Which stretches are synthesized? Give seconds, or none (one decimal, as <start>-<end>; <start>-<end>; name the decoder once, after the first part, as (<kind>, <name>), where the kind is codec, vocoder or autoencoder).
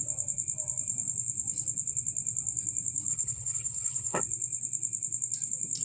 3.1-4.2 (codec, HILCodec)